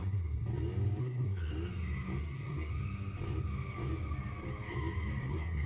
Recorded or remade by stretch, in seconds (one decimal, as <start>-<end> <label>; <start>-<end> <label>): 0.0-0.5 remade; 0.5-1.0 recorded; 1.0-1.5 remade; 1.5-2.2 recorded; 2.2-2.7 remade; 2.7-5.2 recorded; 5.2-5.7 remade